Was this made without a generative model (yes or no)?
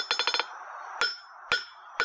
yes